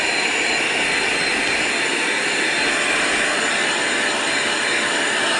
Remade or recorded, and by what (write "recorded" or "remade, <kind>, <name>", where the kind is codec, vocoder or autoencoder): remade, vocoder, BigVGAN v2